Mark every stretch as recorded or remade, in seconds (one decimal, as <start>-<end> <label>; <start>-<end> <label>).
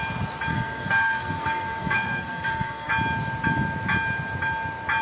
0.0-0.5 recorded; 0.5-2.9 remade; 2.9-5.0 recorded